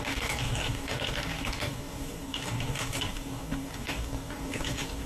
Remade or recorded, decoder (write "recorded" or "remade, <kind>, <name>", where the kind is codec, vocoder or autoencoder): remade, codec, DAC